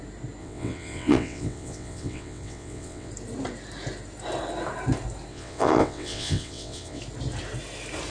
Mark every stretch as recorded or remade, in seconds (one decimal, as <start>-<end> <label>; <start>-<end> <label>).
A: 0.0-0.4 recorded; 0.4-3.1 remade; 3.1-5.3 recorded; 5.3-7.0 remade; 7.0-8.1 recorded